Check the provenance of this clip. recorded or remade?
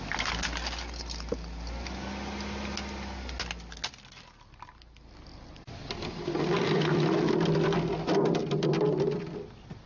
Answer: recorded